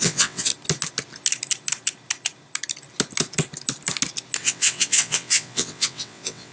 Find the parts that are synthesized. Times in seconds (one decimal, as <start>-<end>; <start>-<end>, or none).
0.0-0.5; 4.4-6.5